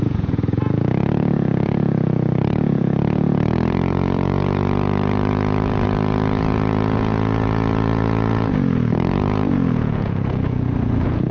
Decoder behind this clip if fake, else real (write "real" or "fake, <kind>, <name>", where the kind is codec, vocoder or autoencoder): fake, vocoder, Vocos